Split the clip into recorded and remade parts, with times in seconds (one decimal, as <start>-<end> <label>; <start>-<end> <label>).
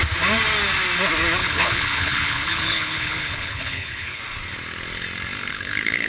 0.0-1.4 recorded; 1.4-4.2 remade; 4.2-5.5 recorded; 5.5-6.1 remade